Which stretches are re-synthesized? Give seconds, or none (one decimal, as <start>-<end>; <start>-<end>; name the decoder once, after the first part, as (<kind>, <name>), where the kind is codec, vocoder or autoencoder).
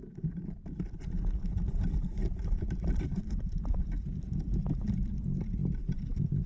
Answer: 2.2-5.1 (vocoder, BigVGAN v2)